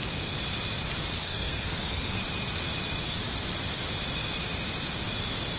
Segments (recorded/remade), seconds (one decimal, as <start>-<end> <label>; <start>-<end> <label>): 0.0-1.2 recorded; 1.2-2.2 remade; 2.2-5.6 recorded